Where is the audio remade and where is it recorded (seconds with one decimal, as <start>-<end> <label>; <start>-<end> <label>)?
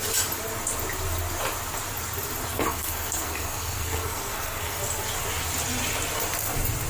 0.0-2.5 recorded; 2.5-4.8 remade; 4.8-6.9 recorded